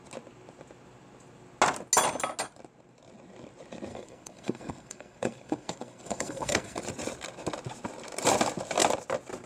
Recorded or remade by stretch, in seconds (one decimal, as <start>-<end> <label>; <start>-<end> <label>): 0.0-3.9 recorded; 3.9-6.8 remade; 6.8-9.5 recorded